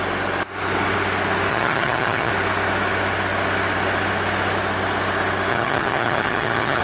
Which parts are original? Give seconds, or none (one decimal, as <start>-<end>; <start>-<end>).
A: 0.0-1.5; 2.3-5.5